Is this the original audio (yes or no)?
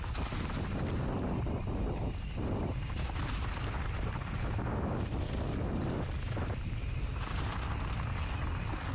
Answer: yes